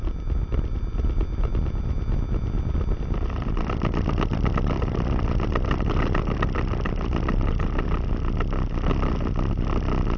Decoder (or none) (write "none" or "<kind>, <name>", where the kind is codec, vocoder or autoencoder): none